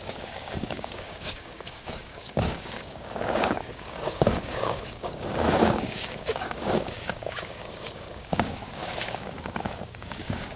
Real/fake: fake